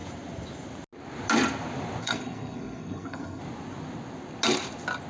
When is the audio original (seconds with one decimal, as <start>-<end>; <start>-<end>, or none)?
0.0-2.0; 3.4-5.1